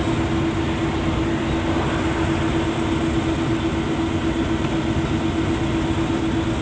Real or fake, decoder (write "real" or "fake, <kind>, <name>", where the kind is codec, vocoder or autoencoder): real